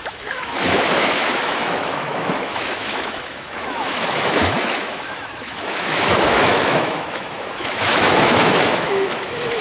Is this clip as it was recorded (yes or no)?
no